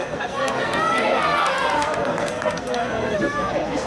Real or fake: fake